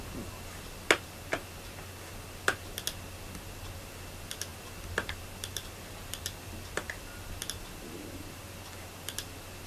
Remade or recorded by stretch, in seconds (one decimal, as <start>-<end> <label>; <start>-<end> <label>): 0.0-9.7 recorded